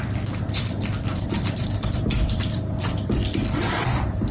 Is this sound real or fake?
fake